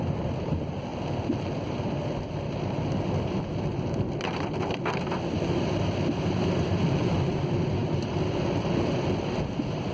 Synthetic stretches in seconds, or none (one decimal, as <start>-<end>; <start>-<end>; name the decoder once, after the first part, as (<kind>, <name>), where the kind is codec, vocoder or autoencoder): none